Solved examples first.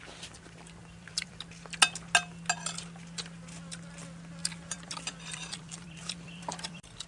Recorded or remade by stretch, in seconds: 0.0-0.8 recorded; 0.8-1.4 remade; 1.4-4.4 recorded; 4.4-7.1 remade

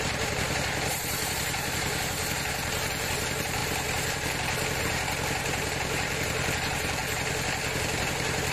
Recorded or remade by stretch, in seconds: 0.0-7.0 remade; 7.0-8.1 recorded; 8.1-8.5 remade

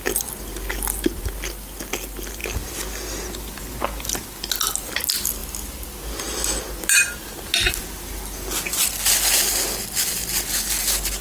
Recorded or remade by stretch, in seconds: 0.0-11.2 recorded

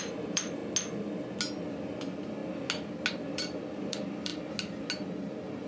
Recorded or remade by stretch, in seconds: 0.0-0.6 remade; 0.6-1.7 recorded; 1.7-2.4 remade; 2.4-3.1 recorded; 3.1-4.3 remade; 4.3-5.2 recorded; 5.2-5.7 remade

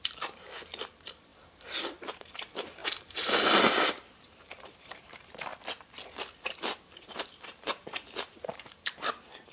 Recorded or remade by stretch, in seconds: 0.0-1.3 remade; 1.3-2.1 recorded; 2.1-5.5 remade; 5.5-6.4 recorded; 6.4-9.5 remade

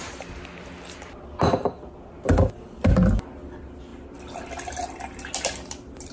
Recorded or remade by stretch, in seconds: 0.0-6.1 recorded

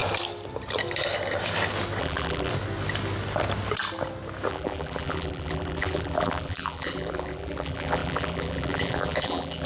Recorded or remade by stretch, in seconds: 0.0-2.0 recorded; 2.0-2.5 remade; 2.5-4.5 recorded; 4.5-9.7 remade